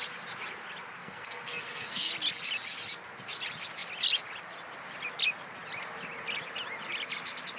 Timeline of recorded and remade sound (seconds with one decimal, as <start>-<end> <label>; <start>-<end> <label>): 0.0-1.0 recorded; 1.0-2.1 remade; 2.1-7.6 recorded